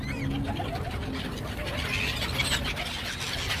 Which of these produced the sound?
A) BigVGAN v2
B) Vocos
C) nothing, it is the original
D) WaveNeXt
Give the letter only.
C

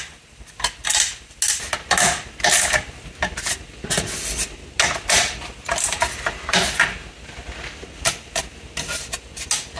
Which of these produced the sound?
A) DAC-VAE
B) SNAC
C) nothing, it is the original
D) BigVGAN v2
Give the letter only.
C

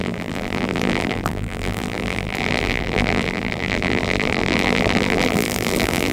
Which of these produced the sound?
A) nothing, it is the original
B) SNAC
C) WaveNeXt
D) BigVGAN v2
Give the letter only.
D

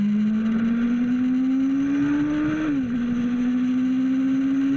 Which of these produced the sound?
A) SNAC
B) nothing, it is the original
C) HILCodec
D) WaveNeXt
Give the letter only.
B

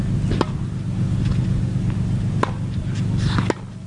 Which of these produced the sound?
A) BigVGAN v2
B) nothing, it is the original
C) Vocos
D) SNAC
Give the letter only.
B